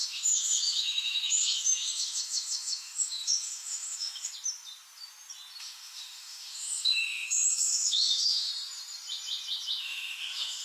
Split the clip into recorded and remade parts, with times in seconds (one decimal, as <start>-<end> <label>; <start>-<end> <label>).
0.0-4.3 remade; 4.3-5.6 recorded; 5.6-8.5 remade; 8.5-9.8 recorded; 9.8-10.6 remade